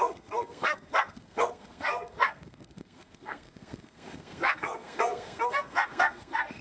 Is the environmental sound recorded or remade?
remade